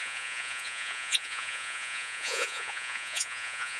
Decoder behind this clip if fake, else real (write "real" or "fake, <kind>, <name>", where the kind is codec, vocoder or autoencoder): fake, vocoder, Vocos